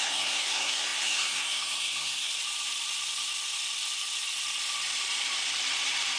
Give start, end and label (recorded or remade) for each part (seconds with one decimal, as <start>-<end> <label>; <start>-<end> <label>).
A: 0.0-2.3 remade; 2.3-6.2 recorded